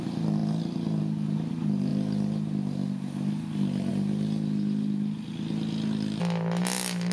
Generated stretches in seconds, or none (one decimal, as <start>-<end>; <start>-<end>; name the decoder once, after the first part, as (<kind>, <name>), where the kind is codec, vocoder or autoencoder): none

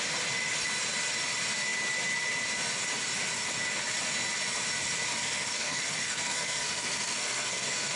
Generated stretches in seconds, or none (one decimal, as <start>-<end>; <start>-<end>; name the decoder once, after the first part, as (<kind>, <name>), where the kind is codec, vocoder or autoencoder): 5.2-8.0 (codec, SNAC)

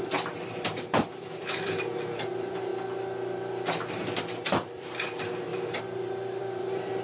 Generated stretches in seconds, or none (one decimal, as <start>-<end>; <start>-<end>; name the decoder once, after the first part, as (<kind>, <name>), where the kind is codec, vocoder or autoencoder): 0.0-2.7 (vocoder, BigVGAN v2); 3.9-5.5; 6.4-7.0

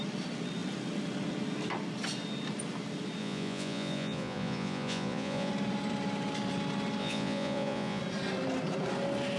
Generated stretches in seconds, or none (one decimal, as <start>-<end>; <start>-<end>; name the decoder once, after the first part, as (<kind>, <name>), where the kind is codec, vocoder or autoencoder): 3.2-5.5 (vocoder, Vocos); 7.0-8.0

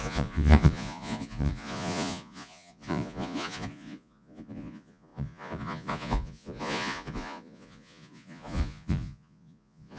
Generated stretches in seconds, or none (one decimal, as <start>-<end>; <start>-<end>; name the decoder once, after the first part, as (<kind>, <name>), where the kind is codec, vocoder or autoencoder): 0.0-10.0 (vocoder, Vocos)